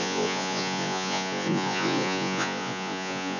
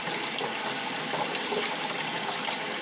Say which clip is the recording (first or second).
second